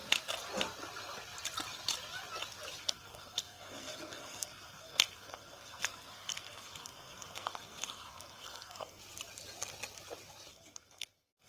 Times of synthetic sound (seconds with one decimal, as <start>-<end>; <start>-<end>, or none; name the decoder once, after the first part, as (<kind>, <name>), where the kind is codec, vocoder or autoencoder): 2.8-9.0 (codec, SNAC); 10.5-11.5